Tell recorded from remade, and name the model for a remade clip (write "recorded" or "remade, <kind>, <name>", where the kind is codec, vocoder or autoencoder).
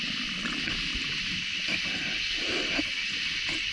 recorded